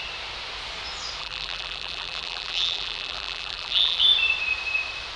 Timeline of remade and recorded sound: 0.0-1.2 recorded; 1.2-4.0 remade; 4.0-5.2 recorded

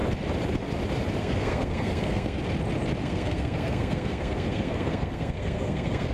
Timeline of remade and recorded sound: 0.0-1.2 recorded; 1.2-2.4 remade; 2.4-3.0 recorded; 3.0-6.1 remade

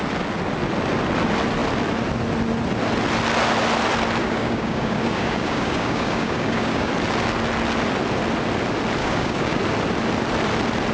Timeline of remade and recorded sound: 0.0-4.2 recorded; 4.2-6.9 remade; 6.9-9.0 recorded; 9.0-9.6 remade; 9.6-10.9 recorded

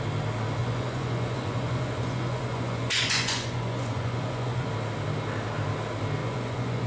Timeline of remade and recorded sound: 0.0-0.6 recorded; 0.6-4.7 remade; 4.7-6.2 recorded; 6.2-6.9 remade

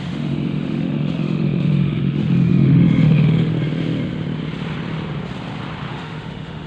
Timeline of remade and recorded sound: 0.0-3.5 remade; 3.5-5.9 recorded; 5.9-6.7 remade

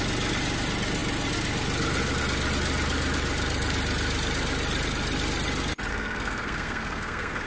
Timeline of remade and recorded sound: 0.0-5.9 recorded; 5.9-7.5 remade

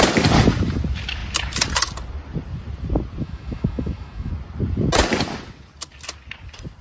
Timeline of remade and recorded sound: 0.0-3.2 recorded; 3.2-4.3 remade; 4.3-6.8 recorded